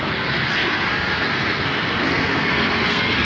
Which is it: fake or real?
fake